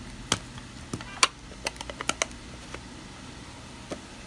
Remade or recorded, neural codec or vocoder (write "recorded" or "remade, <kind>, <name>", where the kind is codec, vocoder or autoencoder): recorded